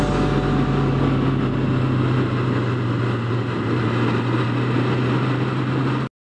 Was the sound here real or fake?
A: real